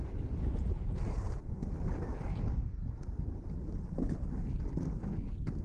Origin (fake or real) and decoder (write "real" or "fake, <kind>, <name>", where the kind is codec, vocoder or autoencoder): real